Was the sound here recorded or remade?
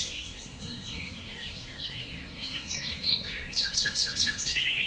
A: remade